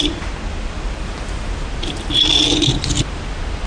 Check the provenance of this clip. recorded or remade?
remade